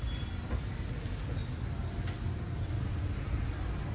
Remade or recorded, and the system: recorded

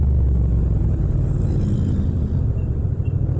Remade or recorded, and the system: recorded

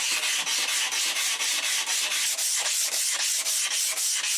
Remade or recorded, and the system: recorded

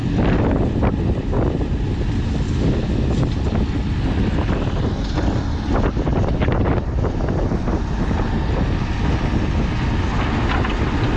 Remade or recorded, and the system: recorded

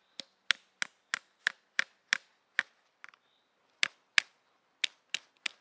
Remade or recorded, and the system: recorded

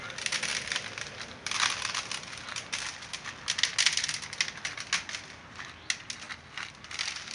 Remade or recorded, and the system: recorded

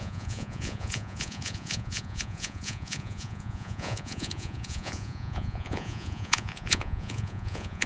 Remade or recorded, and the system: remade, vocoder, Vocos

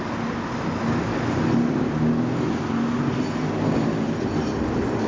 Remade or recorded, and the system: recorded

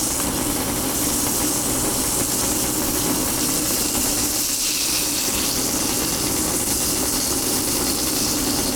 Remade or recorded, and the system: recorded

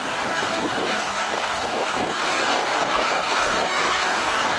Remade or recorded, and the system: remade, codec, DAC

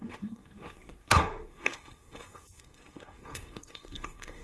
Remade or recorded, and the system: remade, codec, SNAC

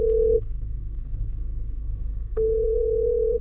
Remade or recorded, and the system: remade, codec, SNAC